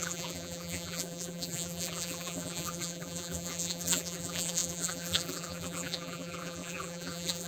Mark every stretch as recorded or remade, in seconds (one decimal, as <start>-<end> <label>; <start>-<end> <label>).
0.0-7.5 remade